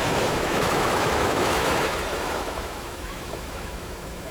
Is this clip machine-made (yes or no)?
yes